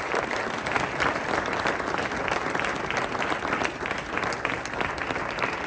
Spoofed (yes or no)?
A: no